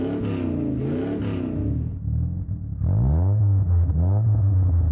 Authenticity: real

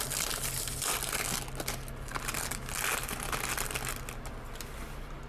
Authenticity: real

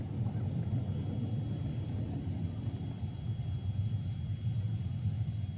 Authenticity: real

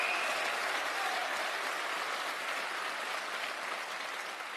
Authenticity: real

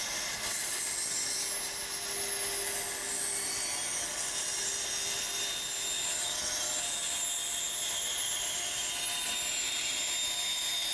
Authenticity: real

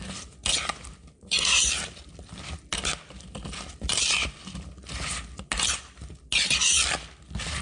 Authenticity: real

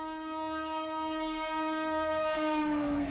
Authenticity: fake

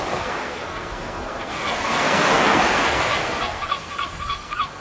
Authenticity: fake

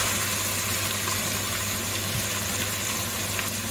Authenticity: real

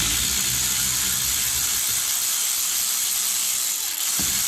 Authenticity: real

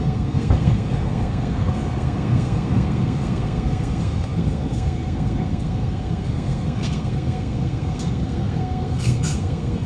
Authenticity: fake